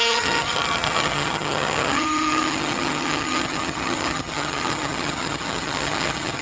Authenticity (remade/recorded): remade